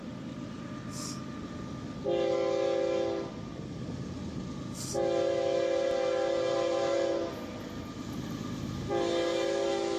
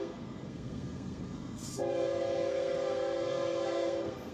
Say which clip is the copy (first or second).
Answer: second